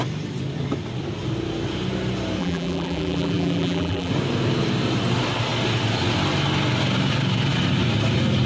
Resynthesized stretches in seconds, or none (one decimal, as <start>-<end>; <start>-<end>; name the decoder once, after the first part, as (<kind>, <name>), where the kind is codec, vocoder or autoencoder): 2.4-4.1 (vocoder, BigVGAN v2)